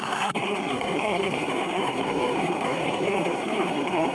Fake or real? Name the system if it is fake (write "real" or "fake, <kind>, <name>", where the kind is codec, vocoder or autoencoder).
fake, codec, SNAC